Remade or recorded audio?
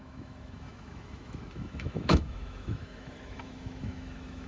remade